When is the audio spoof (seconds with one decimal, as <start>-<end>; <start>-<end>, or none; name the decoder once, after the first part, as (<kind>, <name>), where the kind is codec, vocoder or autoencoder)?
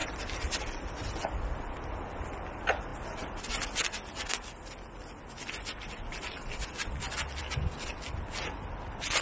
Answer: none